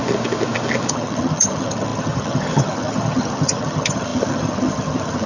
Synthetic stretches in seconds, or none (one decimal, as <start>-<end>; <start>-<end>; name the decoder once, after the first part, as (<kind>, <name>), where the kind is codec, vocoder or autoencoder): 0.9-5.3 (vocoder, HiFi-GAN)